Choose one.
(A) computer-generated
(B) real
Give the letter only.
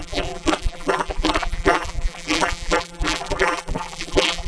A